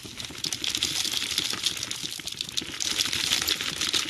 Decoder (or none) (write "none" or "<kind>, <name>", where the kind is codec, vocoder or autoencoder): none